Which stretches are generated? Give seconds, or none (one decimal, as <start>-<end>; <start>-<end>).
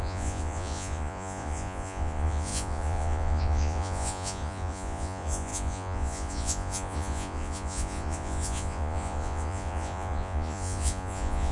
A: 0.0-11.5